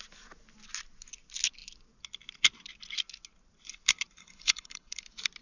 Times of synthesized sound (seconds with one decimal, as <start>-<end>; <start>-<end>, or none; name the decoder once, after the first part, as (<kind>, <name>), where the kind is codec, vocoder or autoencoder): 4.2-5.0 (codec, HILCodec)